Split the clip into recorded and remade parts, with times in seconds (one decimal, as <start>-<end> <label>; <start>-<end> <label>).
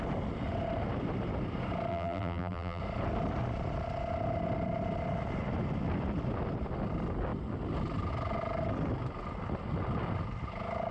0.0-1.9 recorded; 1.9-2.8 remade; 2.8-10.9 recorded